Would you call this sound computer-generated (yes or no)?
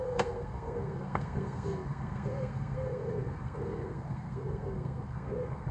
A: yes